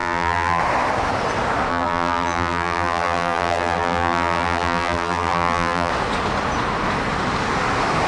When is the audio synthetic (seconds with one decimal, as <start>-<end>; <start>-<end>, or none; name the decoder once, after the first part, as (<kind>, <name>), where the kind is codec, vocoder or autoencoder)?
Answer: 0.0-0.6 (vocoder, BigVGAN v2); 1.7-5.9